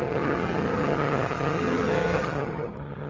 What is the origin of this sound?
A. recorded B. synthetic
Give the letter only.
B